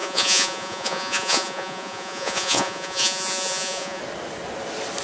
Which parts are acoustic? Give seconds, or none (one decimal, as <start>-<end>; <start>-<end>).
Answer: 4.0-5.0

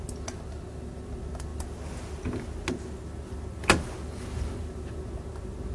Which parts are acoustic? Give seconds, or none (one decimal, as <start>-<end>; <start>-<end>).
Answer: 0.0-5.7

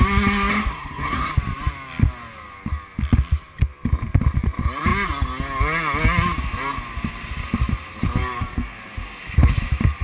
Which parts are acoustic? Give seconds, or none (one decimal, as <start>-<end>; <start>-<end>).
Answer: 0.0-0.5; 1.3-10.0

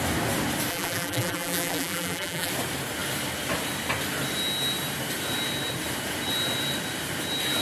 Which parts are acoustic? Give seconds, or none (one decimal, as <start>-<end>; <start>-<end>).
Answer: 0.0-0.7; 2.5-7.6

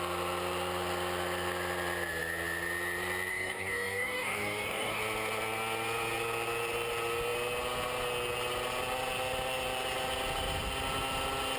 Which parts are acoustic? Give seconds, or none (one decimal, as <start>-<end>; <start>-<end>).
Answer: 0.0-3.3; 5.0-11.6

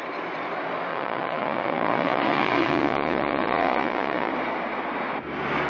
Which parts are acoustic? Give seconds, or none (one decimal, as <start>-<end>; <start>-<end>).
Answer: 0.0-0.9; 4.3-5.7